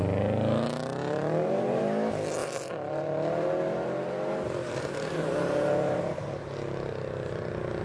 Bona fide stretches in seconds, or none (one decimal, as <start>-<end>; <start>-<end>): 0.0-1.0; 1.8-2.4; 6.9-7.8